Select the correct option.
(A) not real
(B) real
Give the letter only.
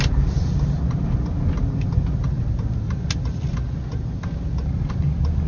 B